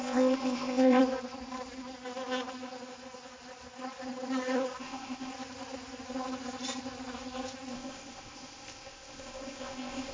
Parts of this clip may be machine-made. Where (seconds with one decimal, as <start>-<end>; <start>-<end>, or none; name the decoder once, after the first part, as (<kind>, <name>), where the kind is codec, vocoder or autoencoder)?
0.0-1.0 (codec, ZipCodec); 4.8-5.3; 7.7-10.1